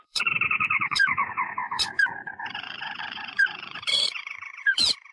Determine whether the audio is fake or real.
fake